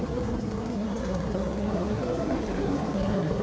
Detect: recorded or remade remade